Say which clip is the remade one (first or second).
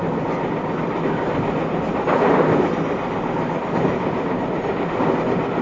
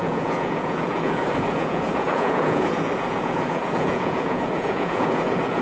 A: second